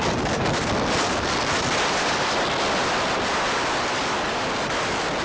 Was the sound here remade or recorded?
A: recorded